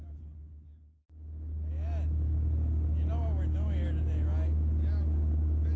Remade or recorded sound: recorded